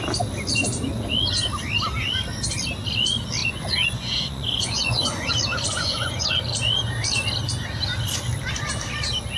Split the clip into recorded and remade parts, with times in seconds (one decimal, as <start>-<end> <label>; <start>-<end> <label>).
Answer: 0.0-3.4 recorded; 3.4-5.3 remade; 5.3-5.7 recorded; 5.7-6.4 remade; 6.4-9.4 recorded